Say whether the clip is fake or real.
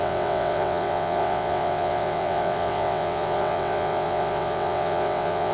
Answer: fake